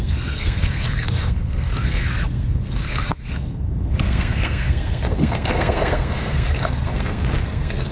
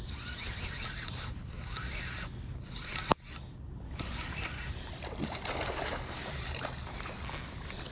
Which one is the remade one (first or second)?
first